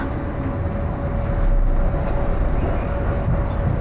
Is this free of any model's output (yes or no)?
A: yes